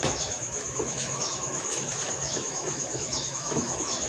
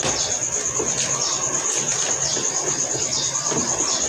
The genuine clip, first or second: second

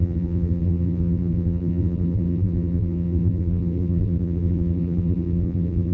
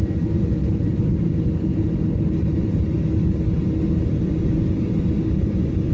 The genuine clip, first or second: second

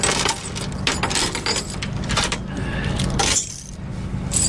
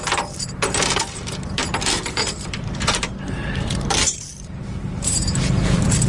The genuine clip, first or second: first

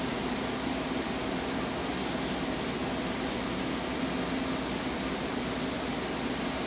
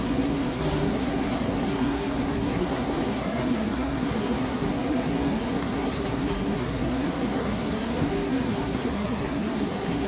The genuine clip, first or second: first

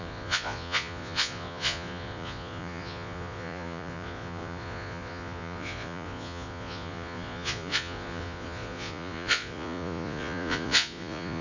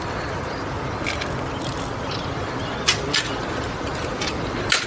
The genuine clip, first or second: second